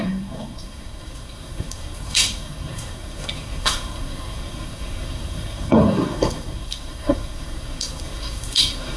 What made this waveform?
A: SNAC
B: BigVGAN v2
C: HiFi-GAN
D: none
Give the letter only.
A